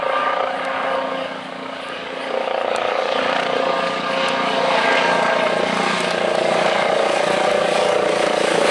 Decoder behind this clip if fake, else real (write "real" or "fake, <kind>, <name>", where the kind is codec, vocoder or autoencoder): fake, codec, DAC